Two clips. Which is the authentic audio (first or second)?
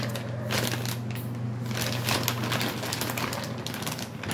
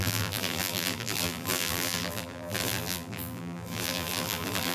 first